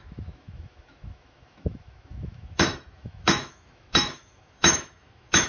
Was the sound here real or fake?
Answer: fake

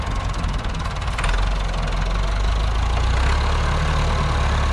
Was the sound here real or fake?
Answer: real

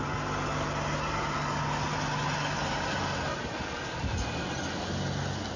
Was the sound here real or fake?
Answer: real